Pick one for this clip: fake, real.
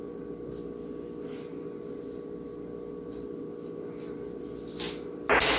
real